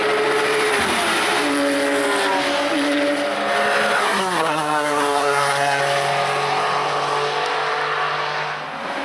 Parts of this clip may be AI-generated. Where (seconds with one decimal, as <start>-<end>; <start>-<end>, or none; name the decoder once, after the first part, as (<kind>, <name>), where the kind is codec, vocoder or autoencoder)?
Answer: 4.0-5.8 (codec, SNAC)